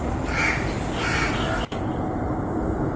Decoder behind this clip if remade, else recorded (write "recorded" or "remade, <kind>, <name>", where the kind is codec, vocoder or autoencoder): recorded